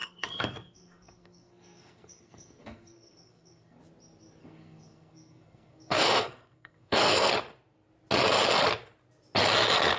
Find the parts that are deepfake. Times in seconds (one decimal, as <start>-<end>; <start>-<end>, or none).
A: 0.0-3.8; 4.4-7.3

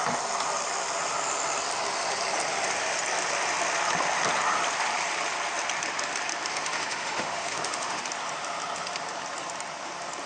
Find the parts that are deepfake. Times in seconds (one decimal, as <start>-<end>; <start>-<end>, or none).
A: 6.5-8.0

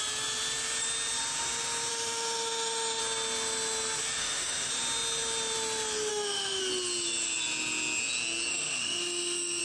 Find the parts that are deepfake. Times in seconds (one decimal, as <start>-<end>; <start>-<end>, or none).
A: 1.9-3.0; 4.2-4.7; 6.1-6.6; 8.5-9.6

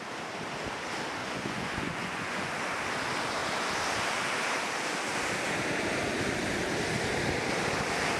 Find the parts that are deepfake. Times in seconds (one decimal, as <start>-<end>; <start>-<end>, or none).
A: 1.2-2.5

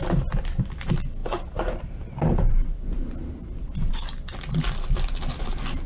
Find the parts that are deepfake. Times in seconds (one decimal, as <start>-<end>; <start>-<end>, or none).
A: none

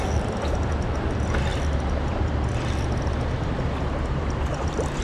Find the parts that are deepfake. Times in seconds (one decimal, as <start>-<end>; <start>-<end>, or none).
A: 0.0-1.5; 2.1-5.0